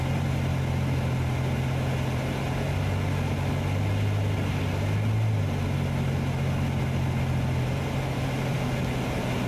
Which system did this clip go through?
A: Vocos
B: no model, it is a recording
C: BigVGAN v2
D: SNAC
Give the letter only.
B